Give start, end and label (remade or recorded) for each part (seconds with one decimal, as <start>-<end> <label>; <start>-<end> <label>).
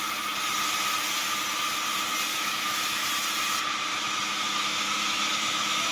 0.0-2.3 recorded; 2.3-3.1 remade; 3.1-3.9 recorded; 3.9-5.9 remade